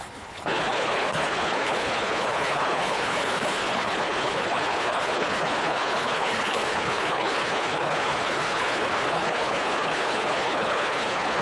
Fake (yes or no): yes